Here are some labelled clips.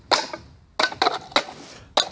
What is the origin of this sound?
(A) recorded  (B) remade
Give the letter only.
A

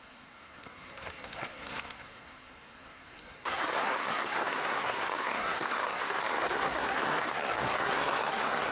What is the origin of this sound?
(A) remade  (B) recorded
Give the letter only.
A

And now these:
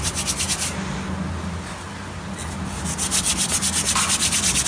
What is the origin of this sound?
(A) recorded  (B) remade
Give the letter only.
A